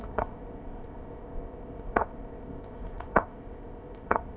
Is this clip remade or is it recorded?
remade